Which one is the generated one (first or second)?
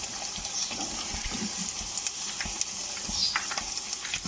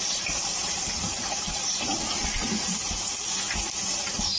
second